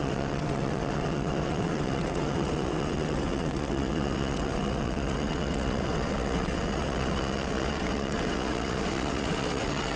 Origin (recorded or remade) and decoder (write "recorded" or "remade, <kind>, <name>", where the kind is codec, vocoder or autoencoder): remade, vocoder, WaveNeXt